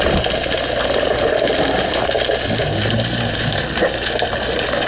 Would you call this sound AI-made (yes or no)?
no